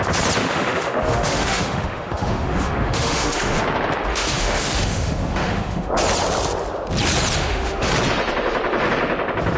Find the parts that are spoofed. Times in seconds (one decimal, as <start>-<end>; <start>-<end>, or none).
0.4-3.6; 4.1-5.9; 7.4-7.9